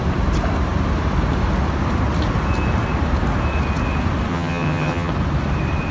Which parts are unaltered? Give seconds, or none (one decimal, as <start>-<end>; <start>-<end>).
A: 0.0-4.3; 5.1-5.9